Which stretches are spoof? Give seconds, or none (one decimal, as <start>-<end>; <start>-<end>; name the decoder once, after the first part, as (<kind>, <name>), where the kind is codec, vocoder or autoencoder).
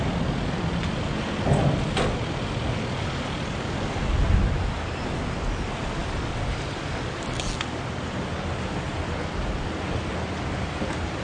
none